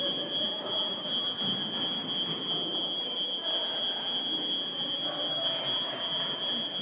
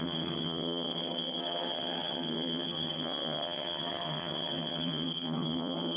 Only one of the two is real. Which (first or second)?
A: first